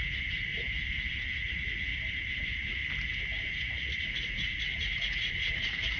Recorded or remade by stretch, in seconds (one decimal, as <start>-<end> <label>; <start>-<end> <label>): 0.0-0.5 remade; 0.5-1.3 recorded; 1.3-1.9 remade; 1.9-2.4 recorded; 2.4-2.8 remade; 2.8-3.5 recorded; 3.5-6.0 remade